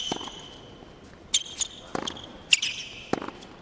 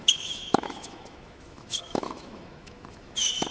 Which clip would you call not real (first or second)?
second